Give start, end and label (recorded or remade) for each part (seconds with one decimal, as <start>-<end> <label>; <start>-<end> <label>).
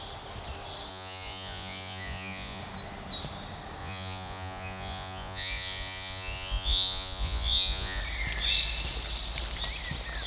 0.0-0.9 recorded; 0.9-2.6 remade; 2.6-3.8 recorded; 3.8-8.0 remade; 8.0-10.3 recorded